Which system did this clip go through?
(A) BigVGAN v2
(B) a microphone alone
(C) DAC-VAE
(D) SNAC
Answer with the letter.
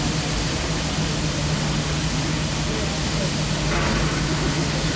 B